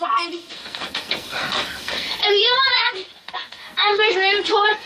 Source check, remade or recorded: remade